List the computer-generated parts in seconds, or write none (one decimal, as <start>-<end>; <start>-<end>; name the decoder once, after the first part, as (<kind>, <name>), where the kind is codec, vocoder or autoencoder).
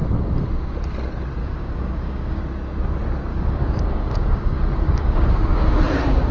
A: 1.4-2.4 (codec, DAC); 3.3-5.8